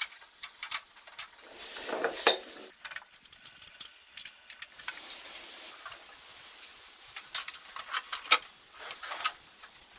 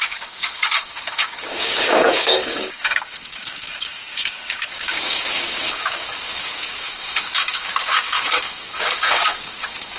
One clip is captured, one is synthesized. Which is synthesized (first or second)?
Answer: second